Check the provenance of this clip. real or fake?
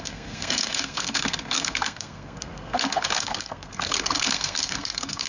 fake